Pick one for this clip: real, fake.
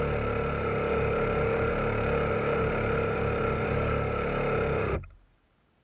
real